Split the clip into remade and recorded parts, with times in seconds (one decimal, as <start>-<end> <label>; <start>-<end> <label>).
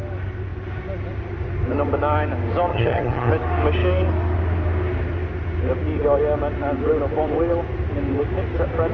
0.0-2.7 recorded; 2.7-3.3 remade; 3.3-8.9 recorded